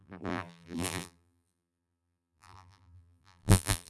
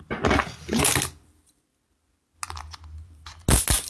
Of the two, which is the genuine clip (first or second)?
second